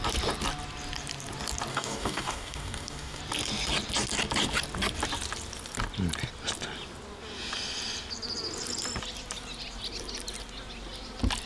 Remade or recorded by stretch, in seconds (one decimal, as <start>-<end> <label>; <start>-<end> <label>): 0.0-1.7 recorded; 1.7-3.2 remade; 3.2-11.5 recorded